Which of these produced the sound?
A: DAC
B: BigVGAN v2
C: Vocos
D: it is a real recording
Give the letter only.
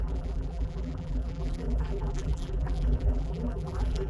B